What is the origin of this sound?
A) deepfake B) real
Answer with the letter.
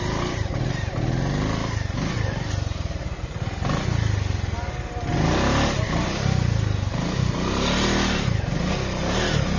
B